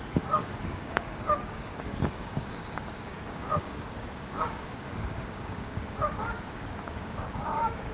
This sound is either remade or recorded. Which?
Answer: remade